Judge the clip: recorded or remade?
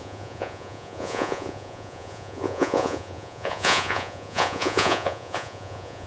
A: remade